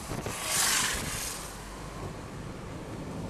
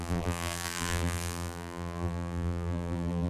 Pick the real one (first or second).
first